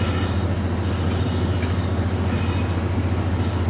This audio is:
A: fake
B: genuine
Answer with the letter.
B